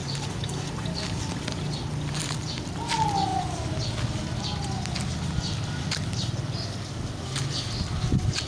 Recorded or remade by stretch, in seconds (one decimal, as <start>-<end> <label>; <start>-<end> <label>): 0.0-8.5 recorded